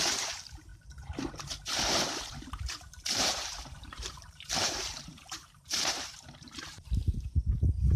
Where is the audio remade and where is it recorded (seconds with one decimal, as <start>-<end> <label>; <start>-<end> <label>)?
0.0-7.0 remade; 7.0-8.0 recorded